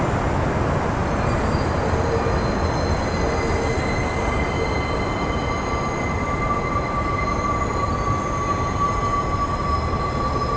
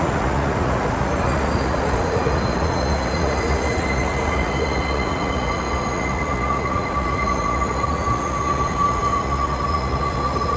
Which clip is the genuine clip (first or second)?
first